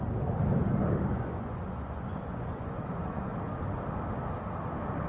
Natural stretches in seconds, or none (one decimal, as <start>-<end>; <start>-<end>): 0.0-1.1; 3.3-5.1

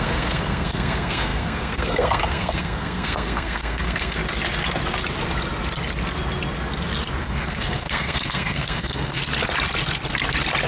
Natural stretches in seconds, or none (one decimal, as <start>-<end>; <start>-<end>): 4.2-7.2; 9.2-10.7

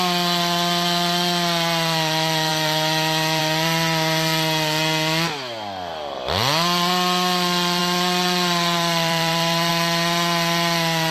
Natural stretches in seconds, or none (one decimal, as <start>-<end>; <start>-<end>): 0.0-7.8; 9.7-11.1

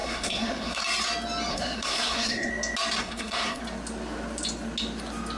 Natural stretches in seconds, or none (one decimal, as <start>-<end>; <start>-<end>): 0.8-1.5; 2.5-3.0; 3.6-5.4

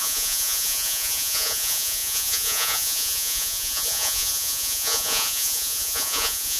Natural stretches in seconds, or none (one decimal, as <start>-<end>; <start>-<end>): none

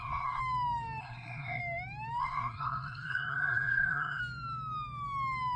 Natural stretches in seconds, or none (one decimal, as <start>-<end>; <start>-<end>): 0.4-1.0; 1.6-2.2; 4.2-5.6

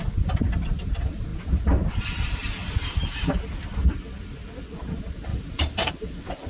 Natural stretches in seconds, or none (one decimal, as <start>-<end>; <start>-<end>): 0.0-0.8; 2.4-4.8